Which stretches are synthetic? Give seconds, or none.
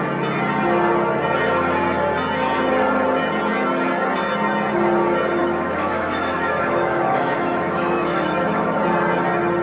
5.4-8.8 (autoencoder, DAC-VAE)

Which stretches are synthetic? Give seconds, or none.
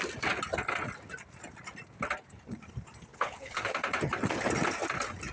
3.1-3.7 (codec, HILCodec)